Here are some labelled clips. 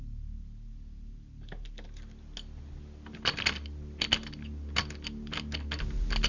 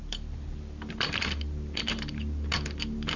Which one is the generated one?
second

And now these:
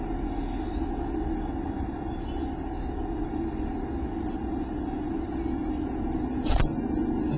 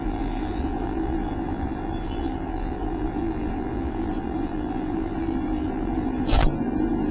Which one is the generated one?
second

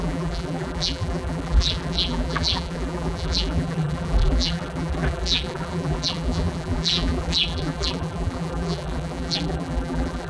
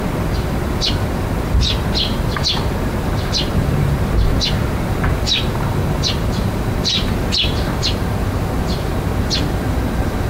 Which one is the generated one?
first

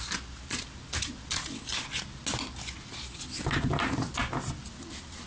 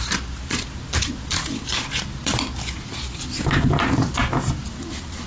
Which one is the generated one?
second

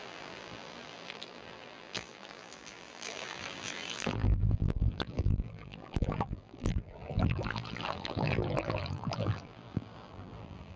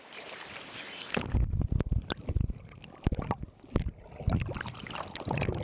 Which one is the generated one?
first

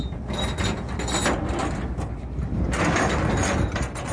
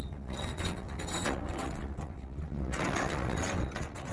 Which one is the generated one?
second